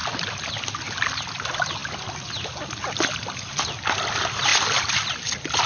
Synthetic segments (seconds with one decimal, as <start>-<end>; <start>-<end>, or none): none